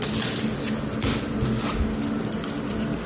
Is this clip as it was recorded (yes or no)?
yes